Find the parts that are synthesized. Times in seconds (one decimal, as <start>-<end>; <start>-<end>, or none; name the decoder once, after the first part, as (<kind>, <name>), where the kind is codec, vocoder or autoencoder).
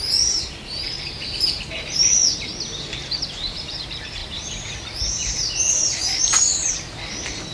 0.0-2.2 (vocoder, BigVGAN v2); 3.0-4.2; 5.1-7.5